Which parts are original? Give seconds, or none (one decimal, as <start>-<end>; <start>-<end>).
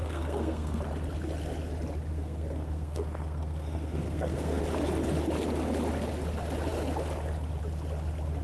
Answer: 0.8-2.1; 4.6-8.4